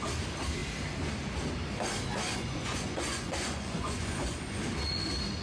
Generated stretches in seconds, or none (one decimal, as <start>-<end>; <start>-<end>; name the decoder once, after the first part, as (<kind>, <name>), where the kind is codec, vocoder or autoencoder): 2.3-4.6 (vocoder, Vocos)